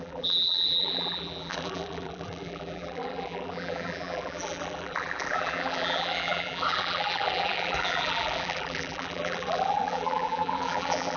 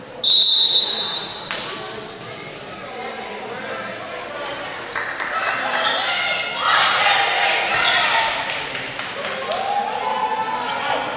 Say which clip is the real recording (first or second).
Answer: second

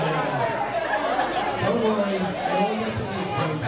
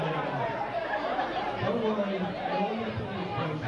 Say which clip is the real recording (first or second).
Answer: first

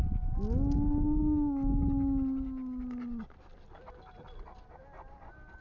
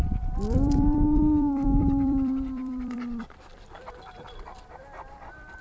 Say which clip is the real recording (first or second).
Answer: first